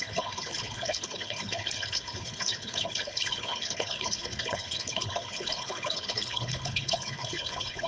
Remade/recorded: remade